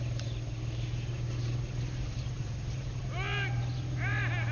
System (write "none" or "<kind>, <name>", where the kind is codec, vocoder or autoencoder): none